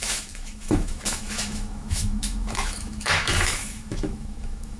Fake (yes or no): yes